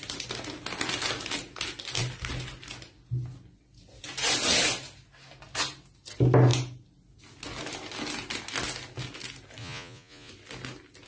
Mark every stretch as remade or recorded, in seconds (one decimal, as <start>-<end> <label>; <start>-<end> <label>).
0.0-9.6 recorded; 9.6-10.3 remade; 10.3-11.1 recorded